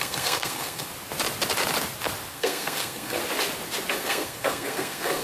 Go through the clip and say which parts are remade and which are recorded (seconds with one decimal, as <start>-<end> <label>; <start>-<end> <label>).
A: 0.0-0.9 remade; 0.9-2.3 recorded; 2.3-3.2 remade; 3.2-3.9 recorded; 3.9-5.2 remade